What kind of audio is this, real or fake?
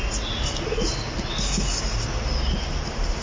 real